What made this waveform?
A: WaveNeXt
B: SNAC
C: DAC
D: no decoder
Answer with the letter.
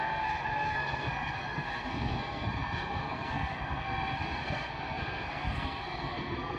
B